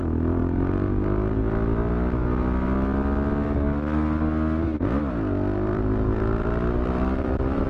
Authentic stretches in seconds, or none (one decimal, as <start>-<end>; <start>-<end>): 0.4-5.0